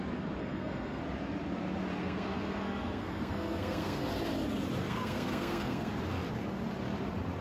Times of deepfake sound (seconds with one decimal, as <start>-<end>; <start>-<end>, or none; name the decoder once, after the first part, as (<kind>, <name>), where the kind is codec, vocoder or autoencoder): 0.4-1.0 (codec, SNAC); 2.0-4.0; 4.8-5.9